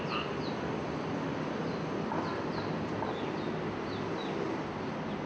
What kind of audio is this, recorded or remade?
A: recorded